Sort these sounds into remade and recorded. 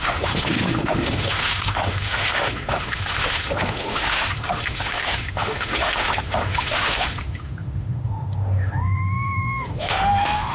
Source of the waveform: remade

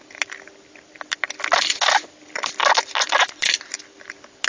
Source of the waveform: recorded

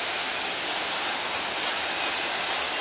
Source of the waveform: recorded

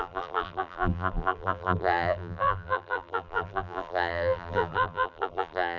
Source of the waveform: remade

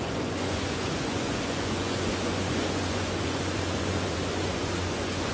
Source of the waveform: remade